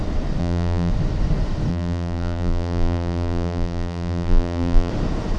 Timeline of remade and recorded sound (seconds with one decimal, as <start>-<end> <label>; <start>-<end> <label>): 0.0-0.4 recorded; 0.4-0.9 remade; 0.9-1.7 recorded; 1.7-4.9 remade; 4.9-5.4 recorded